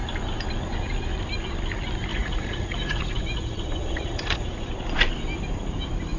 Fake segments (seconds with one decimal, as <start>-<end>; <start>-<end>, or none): 2.1-4.7